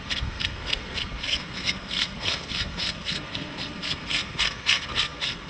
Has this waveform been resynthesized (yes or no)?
yes